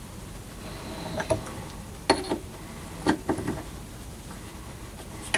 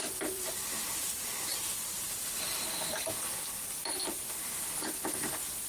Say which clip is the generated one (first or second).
second